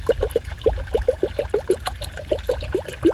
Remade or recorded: recorded